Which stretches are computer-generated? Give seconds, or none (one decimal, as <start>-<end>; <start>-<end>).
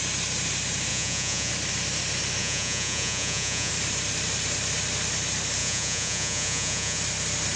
0.9-1.5; 2.4-3.7; 5.6-7.0